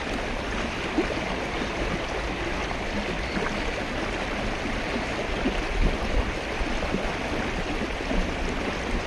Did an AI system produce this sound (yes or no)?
yes